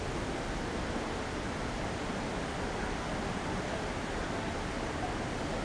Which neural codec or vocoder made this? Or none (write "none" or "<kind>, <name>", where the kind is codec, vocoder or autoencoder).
none